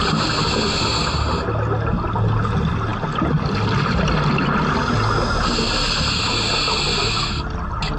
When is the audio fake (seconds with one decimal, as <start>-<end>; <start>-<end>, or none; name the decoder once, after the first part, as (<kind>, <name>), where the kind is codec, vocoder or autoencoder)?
none